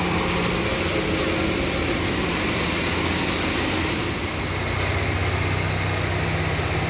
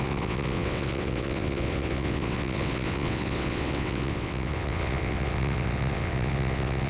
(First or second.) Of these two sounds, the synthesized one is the second